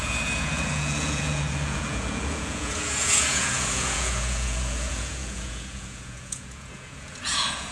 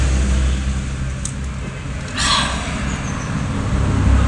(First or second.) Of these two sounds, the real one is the second